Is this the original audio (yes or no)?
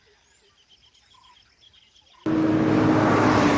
yes